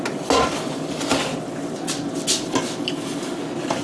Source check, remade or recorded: recorded